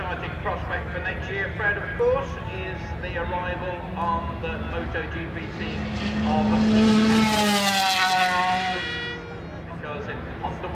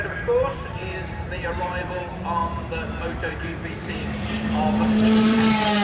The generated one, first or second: second